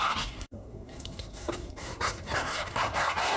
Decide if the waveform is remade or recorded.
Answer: remade